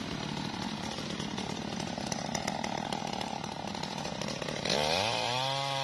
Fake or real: real